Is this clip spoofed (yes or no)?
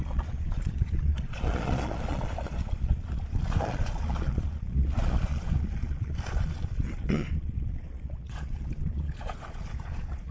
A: yes